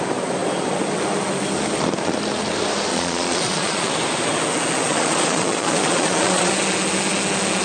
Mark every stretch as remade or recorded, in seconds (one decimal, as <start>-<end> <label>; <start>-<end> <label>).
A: 0.0-2.9 recorded; 2.9-3.9 remade; 3.9-4.9 recorded; 4.9-6.5 remade; 6.5-7.6 recorded